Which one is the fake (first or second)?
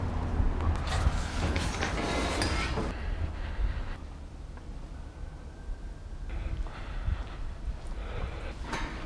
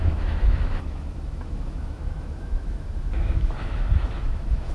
second